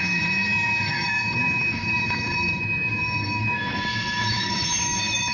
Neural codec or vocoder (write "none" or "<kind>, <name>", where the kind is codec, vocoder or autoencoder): autoencoder, DAC-VAE